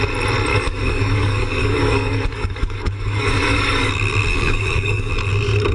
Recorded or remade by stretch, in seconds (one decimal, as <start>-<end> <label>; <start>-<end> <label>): 0.0-0.5 recorded; 0.5-3.9 remade; 3.9-4.3 recorded; 4.3-5.1 remade; 5.1-5.7 recorded